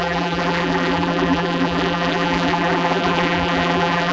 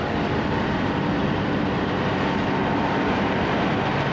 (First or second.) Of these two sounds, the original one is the second